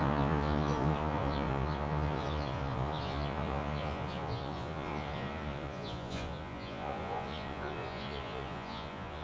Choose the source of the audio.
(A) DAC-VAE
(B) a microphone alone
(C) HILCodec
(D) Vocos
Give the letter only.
D